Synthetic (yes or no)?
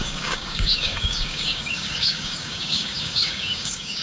yes